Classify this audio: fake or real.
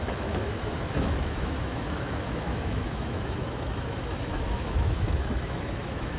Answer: fake